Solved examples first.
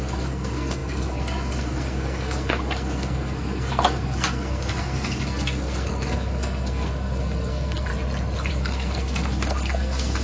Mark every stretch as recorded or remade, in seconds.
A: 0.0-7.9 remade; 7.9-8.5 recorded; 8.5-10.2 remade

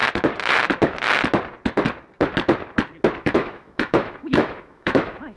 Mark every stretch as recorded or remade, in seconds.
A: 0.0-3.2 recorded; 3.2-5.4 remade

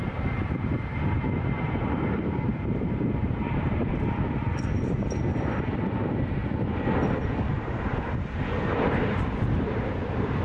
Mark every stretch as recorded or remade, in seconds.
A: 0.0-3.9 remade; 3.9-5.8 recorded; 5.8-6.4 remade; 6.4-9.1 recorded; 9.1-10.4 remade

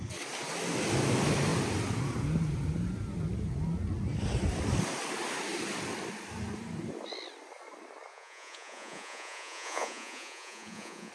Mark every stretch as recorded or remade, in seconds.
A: 0.0-8.1 recorded; 8.1-11.1 remade

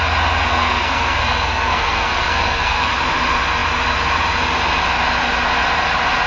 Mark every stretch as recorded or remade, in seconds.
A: 0.0-0.5 recorded; 0.5-2.9 remade; 2.9-6.3 recorded

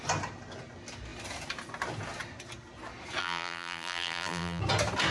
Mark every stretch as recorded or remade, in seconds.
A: 0.0-3.2 recorded; 3.2-4.6 remade; 4.6-5.1 recorded

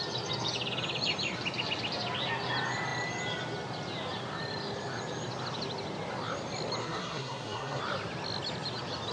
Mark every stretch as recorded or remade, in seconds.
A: 0.0-6.8 recorded; 6.8-7.8 remade; 7.8-9.1 recorded

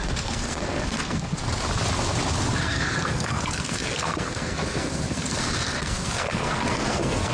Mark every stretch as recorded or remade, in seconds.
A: 0.0-1.4 remade; 1.4-2.6 recorded; 2.6-7.3 remade